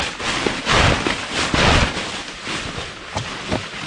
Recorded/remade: recorded